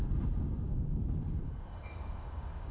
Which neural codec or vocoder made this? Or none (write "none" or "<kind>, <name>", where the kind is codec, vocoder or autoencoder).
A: codec, DAC